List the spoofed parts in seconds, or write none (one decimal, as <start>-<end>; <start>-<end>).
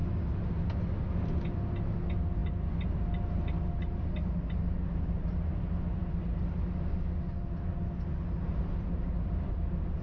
none